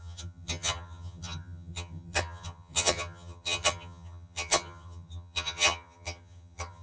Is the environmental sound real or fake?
fake